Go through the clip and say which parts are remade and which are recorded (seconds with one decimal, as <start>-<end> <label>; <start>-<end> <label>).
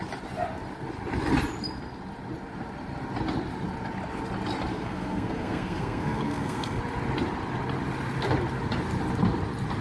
0.0-4.7 recorded; 4.7-6.8 remade; 6.8-9.8 recorded